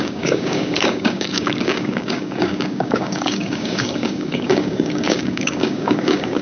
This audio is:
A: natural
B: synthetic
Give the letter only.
B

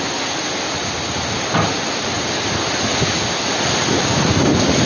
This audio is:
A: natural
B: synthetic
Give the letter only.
A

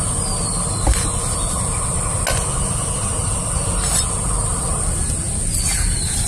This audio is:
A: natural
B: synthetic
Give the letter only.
A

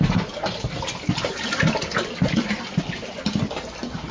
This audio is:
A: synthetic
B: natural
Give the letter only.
B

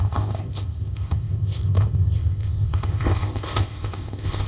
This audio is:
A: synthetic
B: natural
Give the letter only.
A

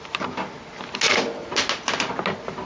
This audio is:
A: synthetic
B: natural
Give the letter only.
B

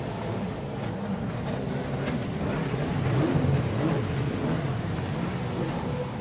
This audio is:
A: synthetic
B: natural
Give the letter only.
B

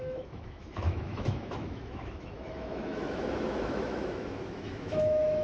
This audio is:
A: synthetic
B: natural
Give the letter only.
A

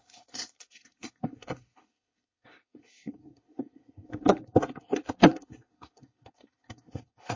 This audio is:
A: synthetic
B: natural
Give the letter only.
A